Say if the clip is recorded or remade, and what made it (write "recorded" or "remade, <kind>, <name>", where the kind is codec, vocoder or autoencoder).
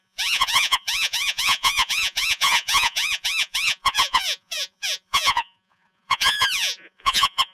remade, vocoder, Vocos